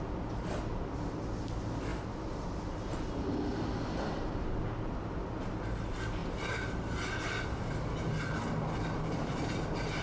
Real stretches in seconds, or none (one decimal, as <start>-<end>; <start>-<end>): 0.0-10.0